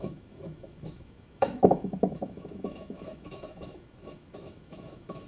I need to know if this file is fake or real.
fake